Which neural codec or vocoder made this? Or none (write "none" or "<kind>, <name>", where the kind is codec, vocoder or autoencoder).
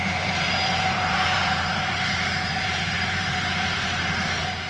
vocoder, BigVGAN v2